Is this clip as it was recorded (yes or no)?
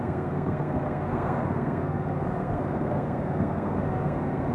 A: no